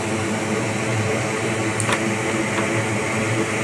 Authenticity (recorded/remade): recorded